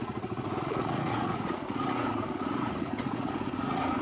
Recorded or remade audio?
remade